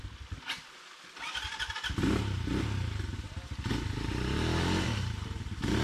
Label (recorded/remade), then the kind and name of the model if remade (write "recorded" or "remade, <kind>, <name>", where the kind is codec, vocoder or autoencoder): recorded